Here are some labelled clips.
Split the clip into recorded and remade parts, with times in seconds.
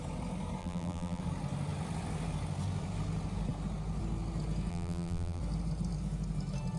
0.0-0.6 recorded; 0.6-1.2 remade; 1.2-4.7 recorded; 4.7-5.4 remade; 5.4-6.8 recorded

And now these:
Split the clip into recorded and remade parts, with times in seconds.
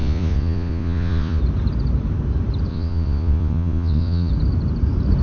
0.0-1.4 remade; 1.4-2.7 recorded; 2.7-4.3 remade; 4.3-5.2 recorded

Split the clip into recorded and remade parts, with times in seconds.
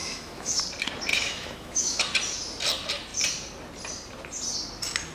0.0-0.6 remade; 0.6-1.1 recorded; 1.1-2.0 remade; 2.0-5.1 recorded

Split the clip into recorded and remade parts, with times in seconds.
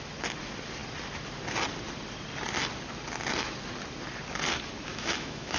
0.0-4.9 recorded; 4.9-5.6 remade